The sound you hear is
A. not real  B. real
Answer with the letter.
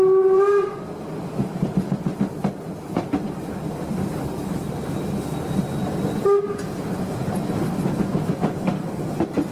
B